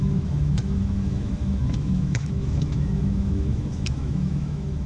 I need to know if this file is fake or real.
fake